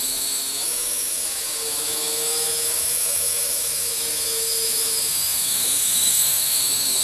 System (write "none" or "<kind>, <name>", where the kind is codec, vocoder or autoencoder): autoencoder, DAC-VAE